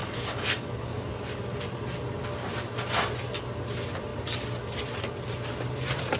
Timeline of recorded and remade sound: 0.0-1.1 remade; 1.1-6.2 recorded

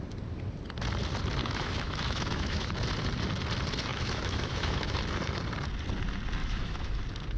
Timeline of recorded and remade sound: 0.0-1.4 recorded; 1.4-2.7 remade; 2.7-3.9 recorded; 3.9-5.0 remade; 5.0-6.4 recorded; 6.4-7.0 remade; 7.0-7.4 recorded

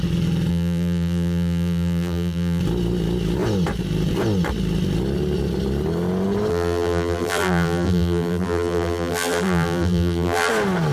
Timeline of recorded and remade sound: 0.0-0.5 recorded; 0.5-2.6 remade; 2.6-6.5 recorded; 6.5-10.5 remade; 10.5-10.9 recorded

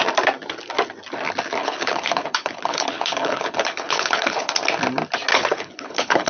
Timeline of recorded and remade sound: 0.0-1.6 recorded; 1.6-4.5 remade; 4.5-5.3 recorded; 5.3-6.3 remade

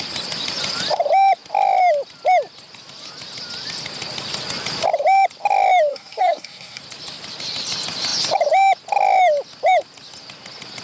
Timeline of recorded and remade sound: 0.0-5.9 recorded; 5.9-6.8 remade; 6.8-10.8 recorded

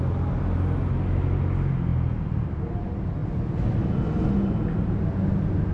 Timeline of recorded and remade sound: 0.0-5.7 recorded

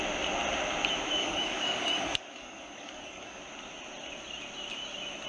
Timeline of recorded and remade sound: 0.0-1.2 recorded; 1.2-3.4 remade; 3.4-5.3 recorded